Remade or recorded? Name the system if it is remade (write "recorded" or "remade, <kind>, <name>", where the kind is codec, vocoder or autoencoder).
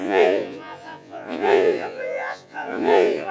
remade, vocoder, Vocos